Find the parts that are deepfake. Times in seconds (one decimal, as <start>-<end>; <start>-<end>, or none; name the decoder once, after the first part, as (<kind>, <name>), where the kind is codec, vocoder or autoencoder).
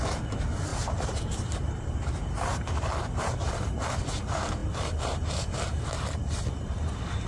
0.7-3.5 (vocoder, BigVGAN v2)